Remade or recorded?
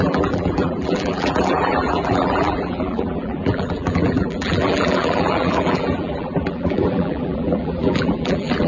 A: remade